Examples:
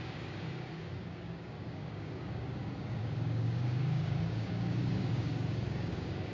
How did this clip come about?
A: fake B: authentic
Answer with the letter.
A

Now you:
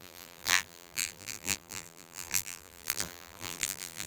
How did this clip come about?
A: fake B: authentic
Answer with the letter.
A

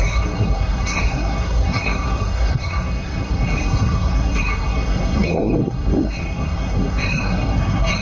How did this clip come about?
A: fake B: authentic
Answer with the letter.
A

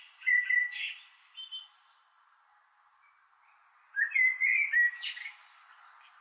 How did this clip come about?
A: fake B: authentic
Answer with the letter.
B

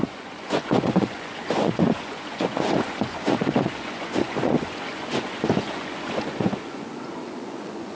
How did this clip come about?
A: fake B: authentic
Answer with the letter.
A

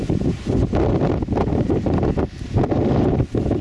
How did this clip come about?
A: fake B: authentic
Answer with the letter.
B